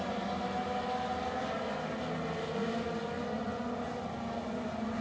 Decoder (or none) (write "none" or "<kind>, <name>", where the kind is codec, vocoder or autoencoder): none